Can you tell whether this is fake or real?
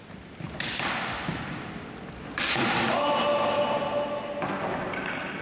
real